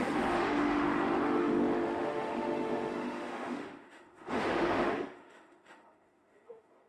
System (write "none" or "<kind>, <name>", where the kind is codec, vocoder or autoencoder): autoencoder, DAC-VAE